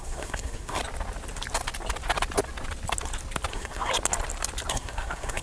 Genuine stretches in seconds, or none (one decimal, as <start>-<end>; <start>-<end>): 0.8-3.5; 3.9-4.7